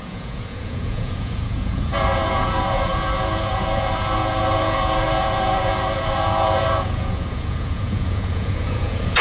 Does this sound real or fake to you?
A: fake